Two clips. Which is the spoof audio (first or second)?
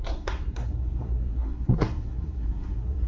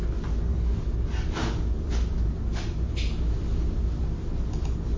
first